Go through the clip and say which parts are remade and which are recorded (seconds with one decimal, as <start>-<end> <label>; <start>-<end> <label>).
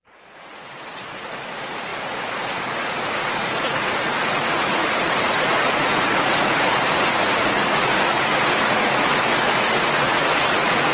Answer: 0.0-10.9 remade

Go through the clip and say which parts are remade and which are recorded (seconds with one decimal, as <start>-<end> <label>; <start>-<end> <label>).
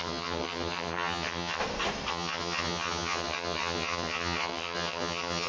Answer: 0.0-1.6 remade; 1.6-2.1 recorded; 2.1-5.5 remade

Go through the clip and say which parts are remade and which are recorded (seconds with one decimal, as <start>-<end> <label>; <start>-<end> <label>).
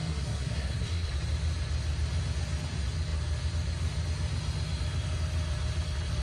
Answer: 0.0-1.1 remade; 1.1-6.2 recorded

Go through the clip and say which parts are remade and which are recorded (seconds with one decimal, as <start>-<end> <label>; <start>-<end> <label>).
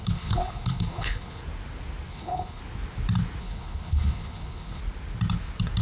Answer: 0.0-1.4 remade; 1.4-2.1 recorded; 2.1-2.6 remade; 2.6-3.4 recorded; 3.4-4.8 remade; 4.8-5.8 recorded